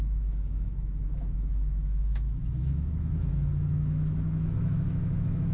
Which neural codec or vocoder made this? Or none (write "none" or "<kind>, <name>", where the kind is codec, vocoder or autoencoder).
autoencoder, DAC-VAE